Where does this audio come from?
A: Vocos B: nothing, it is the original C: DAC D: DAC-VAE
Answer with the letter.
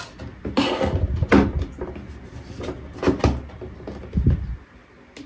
B